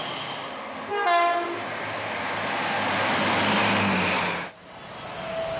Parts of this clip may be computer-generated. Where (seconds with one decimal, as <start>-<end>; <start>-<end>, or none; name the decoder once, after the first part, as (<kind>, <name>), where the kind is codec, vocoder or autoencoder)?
none